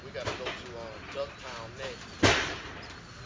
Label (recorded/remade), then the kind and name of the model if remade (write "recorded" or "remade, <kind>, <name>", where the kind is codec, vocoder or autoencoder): recorded